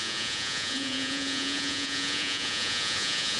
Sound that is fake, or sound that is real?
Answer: fake